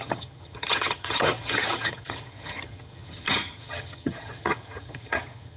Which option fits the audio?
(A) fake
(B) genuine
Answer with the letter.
A